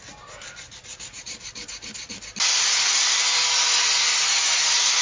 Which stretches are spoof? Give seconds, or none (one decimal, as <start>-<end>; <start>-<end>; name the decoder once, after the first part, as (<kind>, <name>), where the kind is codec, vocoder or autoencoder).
0.9-2.1 (vocoder, BigVGAN v2)